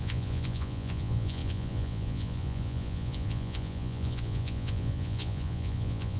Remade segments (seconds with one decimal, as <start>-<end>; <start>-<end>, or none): 0.0-6.2